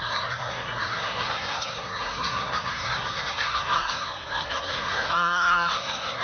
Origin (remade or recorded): remade